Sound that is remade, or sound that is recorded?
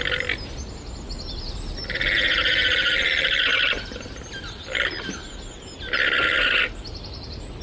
recorded